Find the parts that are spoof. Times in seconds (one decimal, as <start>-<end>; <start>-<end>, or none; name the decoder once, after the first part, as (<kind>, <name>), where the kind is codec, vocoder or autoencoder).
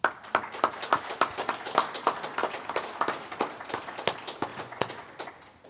4.5-5.3 (vocoder, Vocos)